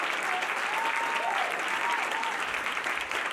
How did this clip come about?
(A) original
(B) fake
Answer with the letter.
A